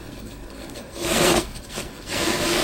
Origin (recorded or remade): remade